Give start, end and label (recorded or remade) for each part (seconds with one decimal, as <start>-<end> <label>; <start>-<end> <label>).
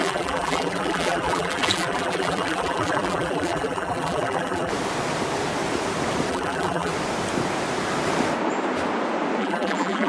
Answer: 0.0-4.7 remade; 4.7-6.3 recorded; 6.3-6.9 remade; 6.9-9.4 recorded; 9.4-10.1 remade